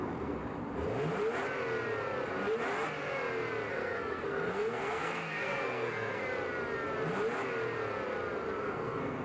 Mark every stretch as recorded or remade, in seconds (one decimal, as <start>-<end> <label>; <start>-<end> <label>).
0.0-0.4 remade; 0.4-3.7 recorded; 3.7-6.2 remade; 6.2-8.6 recorded; 8.6-9.2 remade

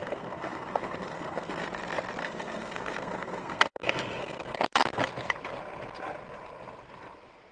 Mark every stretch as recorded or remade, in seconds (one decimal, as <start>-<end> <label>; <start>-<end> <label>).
0.0-1.7 remade; 1.7-2.2 recorded; 2.2-5.0 remade; 5.0-7.5 recorded